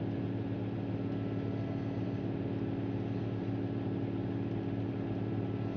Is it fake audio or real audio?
real